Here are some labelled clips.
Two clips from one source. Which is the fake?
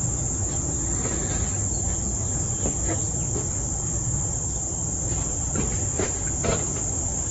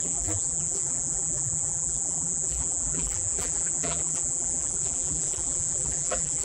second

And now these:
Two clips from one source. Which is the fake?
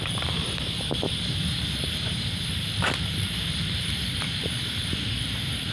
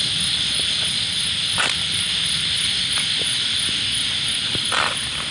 first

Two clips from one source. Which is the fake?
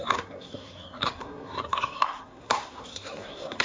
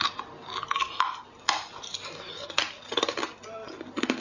first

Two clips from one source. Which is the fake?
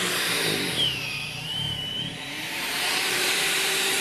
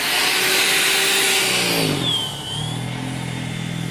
first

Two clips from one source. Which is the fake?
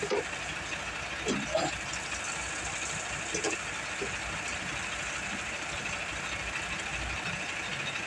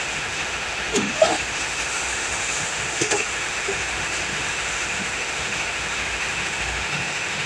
second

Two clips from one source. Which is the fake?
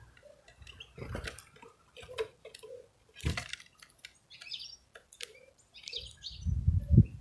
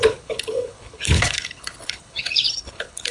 second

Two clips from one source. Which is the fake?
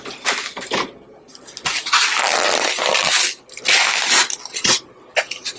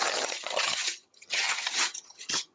second